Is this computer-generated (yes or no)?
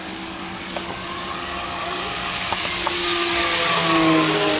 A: yes